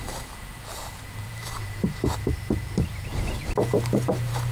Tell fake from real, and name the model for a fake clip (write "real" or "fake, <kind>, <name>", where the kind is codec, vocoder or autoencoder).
fake, vocoder, BigVGAN v2